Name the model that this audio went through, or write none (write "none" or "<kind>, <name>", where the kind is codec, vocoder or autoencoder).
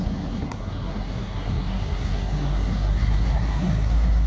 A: codec, SNAC